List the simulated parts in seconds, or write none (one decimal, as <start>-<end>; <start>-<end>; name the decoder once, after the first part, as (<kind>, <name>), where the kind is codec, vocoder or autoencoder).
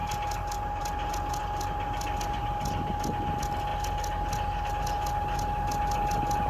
none